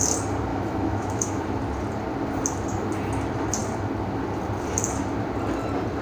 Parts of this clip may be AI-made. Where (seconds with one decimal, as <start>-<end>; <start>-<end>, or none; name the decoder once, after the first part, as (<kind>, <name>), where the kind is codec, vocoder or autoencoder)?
0.5-1.4 (autoencoder, DAC-VAE)